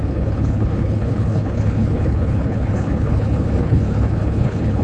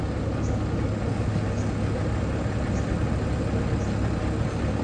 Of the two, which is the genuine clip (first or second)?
second